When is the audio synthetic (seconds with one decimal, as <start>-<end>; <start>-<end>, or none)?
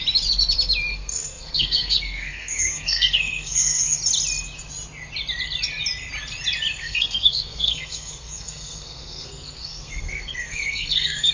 0.9-4.0; 6.8-11.3